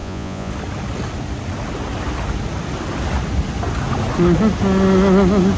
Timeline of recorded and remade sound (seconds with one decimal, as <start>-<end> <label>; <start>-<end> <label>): 0.0-0.5 remade; 0.5-5.6 recorded